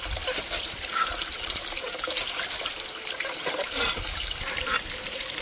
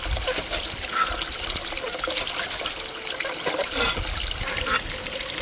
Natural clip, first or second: second